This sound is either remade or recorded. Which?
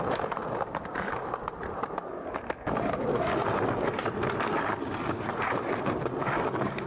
recorded